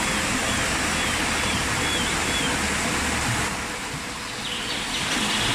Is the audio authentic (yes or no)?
yes